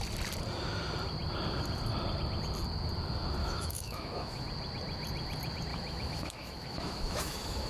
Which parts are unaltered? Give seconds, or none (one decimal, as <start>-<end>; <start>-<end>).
0.0-3.4; 4.4-5.7